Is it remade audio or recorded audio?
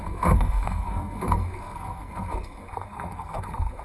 remade